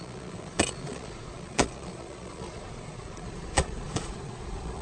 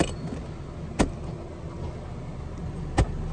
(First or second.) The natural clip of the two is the second